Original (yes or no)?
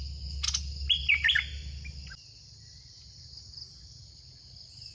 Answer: yes